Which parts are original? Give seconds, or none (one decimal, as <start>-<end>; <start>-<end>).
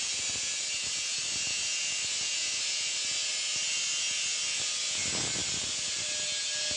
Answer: 0.0-6.8